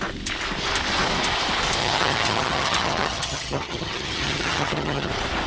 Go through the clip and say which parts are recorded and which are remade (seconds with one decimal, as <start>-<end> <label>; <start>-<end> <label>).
0.0-1.8 recorded; 1.8-5.1 remade; 5.1-5.5 recorded